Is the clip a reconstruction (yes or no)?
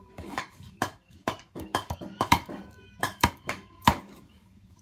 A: yes